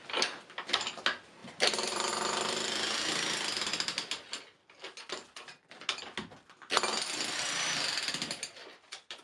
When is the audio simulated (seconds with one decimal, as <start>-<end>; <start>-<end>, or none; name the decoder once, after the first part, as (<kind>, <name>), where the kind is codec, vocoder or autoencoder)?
1.4-2.1 (vocoder, BigVGAN v2); 8.6-9.2

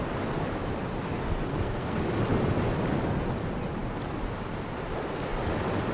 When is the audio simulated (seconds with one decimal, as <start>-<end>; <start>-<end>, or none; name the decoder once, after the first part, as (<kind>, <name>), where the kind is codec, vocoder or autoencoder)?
1.5-2.0 (codec, SNAC)

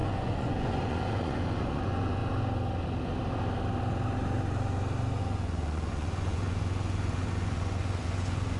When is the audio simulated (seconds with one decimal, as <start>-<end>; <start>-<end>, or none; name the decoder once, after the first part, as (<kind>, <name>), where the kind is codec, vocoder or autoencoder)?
0.0-2.2 (vocoder, Vocos); 5.2-8.6

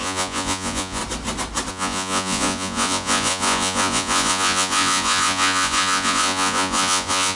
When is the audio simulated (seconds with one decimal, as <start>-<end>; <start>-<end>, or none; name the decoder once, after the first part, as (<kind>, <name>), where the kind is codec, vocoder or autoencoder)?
0.0-1.0 (vocoder, Vocos); 1.7-7.4

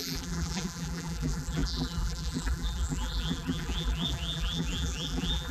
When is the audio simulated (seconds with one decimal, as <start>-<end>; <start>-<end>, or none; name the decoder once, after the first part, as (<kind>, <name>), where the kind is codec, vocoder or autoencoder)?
0.0-5.5 (vocoder, BigVGAN v2)

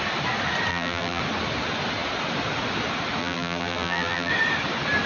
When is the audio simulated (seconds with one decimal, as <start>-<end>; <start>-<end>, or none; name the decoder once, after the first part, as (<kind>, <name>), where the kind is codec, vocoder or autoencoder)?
0.7-1.2 (vocoder, BigVGAN v2); 3.2-4.3